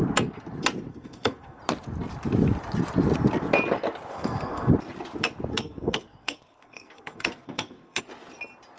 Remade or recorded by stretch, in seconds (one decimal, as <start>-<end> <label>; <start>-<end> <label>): 0.0-0.9 recorded; 0.9-1.6 remade; 1.6-4.1 recorded; 4.1-4.7 remade; 4.7-5.5 recorded; 5.5-8.0 remade; 8.0-8.8 recorded